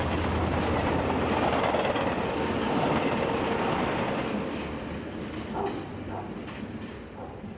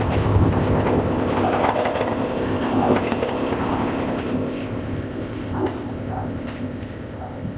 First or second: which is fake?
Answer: second